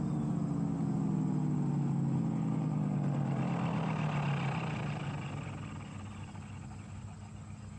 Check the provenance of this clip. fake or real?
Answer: real